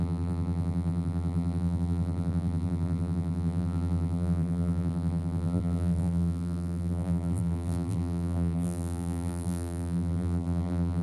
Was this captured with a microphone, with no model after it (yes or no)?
no